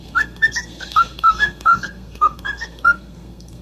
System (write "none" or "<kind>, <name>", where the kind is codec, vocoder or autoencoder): codec, SNAC